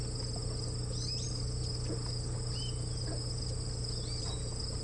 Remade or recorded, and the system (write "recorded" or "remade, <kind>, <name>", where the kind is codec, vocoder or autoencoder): recorded